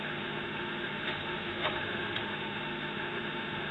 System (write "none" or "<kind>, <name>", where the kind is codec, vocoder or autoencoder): autoencoder, DAC-VAE